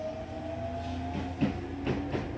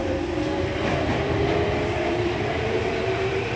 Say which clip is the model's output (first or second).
second